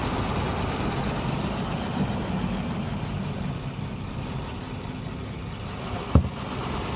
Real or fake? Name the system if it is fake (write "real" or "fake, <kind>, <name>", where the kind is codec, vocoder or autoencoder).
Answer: real